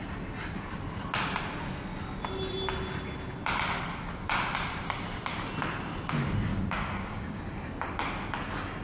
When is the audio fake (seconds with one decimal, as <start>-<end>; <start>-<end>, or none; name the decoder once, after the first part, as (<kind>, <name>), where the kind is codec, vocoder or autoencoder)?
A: 6.5-7.4 (codec, DAC)